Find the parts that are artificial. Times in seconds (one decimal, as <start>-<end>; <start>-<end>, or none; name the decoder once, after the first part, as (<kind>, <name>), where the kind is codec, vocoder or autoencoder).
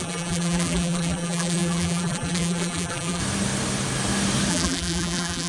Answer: 0.0-3.2 (vocoder, BigVGAN v2); 4.5-5.5